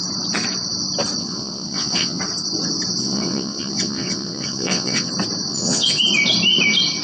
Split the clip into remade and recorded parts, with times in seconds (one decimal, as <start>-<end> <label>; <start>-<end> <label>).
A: 0.0-1.2 recorded; 1.2-2.2 remade; 2.2-3.0 recorded; 3.0-5.1 remade; 5.1-5.5 recorded; 5.5-6.0 remade; 6.0-7.0 recorded